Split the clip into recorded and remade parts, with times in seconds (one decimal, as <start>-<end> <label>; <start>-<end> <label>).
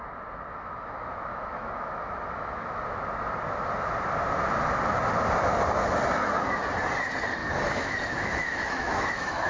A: 0.0-0.5 recorded; 0.5-2.8 remade; 2.8-7.4 recorded; 7.4-9.5 remade